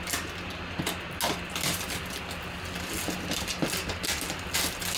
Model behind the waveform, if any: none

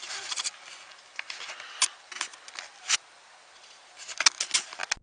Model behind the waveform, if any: none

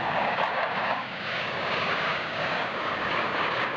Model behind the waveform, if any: codec, DAC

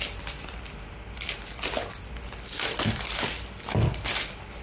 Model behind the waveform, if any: none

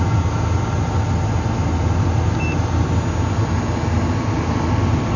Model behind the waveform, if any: none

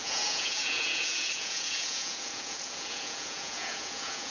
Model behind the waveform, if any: vocoder, Vocos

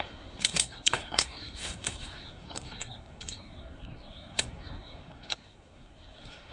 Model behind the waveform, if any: codec, SNAC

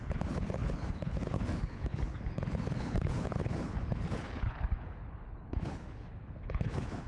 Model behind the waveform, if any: codec, HILCodec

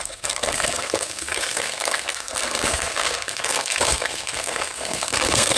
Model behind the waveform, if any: codec, SNAC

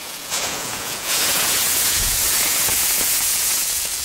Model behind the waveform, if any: vocoder, Vocos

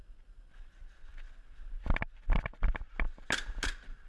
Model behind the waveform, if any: none